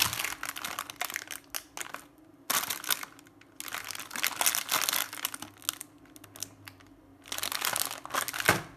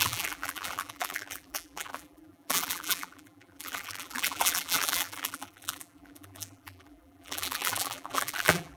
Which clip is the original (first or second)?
first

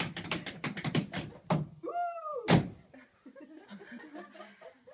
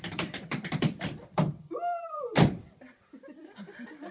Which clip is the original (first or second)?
first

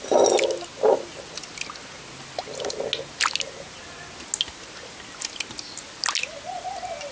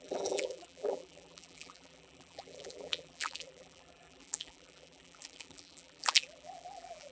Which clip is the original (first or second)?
first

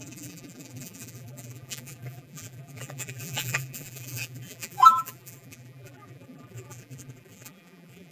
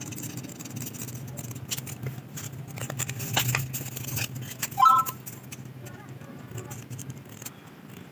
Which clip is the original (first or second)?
second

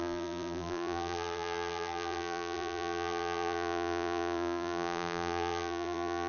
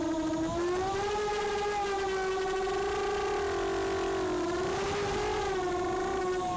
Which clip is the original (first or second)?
second